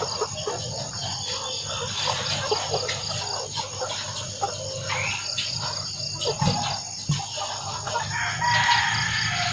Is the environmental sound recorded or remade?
recorded